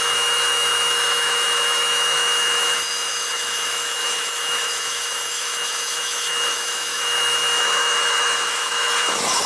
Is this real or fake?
fake